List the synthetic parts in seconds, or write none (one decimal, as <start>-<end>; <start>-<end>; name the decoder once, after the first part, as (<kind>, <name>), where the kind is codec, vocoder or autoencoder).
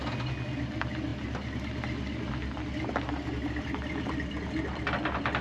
none